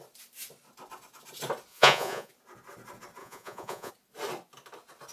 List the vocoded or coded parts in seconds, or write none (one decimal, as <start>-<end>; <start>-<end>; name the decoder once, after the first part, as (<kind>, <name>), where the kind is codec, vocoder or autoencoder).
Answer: 1.7-2.3 (vocoder, Vocos); 3.2-3.9